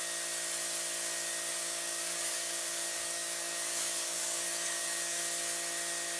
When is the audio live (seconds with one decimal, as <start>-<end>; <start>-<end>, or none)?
0.0-1.5; 5.2-6.2